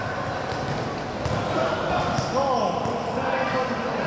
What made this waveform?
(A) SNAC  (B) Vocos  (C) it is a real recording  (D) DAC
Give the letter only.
C